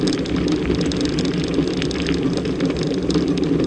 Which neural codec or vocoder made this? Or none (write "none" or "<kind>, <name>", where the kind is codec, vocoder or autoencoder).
none